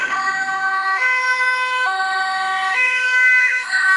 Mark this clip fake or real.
fake